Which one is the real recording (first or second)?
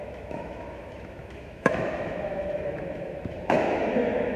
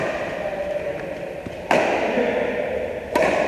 second